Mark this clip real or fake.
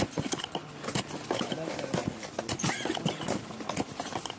real